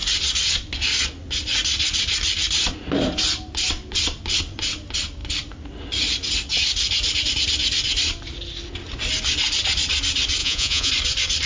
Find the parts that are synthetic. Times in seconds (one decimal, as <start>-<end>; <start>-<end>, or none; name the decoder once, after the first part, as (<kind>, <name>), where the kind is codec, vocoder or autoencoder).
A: 10.4-10.9 (vocoder, Vocos)